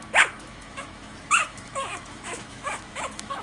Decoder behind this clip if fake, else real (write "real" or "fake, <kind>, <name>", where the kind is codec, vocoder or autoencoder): fake, autoencoder, DAC-VAE